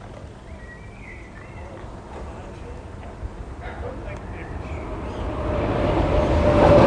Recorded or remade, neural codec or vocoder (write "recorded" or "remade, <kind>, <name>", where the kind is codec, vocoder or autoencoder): recorded